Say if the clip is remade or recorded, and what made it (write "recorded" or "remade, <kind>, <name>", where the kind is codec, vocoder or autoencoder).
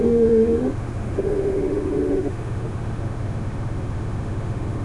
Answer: remade, autoencoder, DAC-VAE